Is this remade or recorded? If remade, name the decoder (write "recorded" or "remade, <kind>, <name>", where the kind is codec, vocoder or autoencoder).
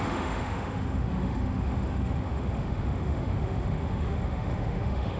remade, autoencoder, DAC-VAE